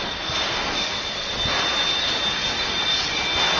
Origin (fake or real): real